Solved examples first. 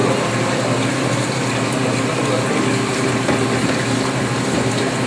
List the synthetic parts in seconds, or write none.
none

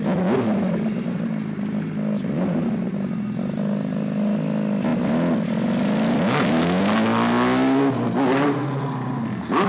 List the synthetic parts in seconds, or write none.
none